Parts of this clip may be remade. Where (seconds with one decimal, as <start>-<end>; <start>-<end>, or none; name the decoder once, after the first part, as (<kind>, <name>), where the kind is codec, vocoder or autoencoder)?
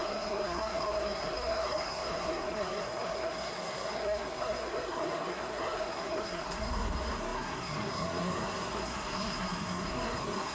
0.0-10.5 (codec, SNAC)